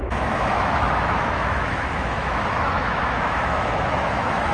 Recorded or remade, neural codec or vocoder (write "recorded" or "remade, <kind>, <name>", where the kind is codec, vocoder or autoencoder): remade, autoencoder, DAC-VAE